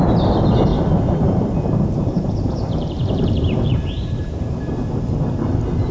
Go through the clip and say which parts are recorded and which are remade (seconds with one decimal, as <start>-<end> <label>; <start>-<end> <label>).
0.0-0.7 recorded; 0.7-4.2 remade; 4.2-5.9 recorded